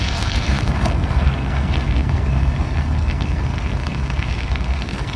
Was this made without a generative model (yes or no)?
no